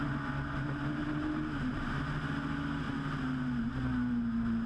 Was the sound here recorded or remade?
recorded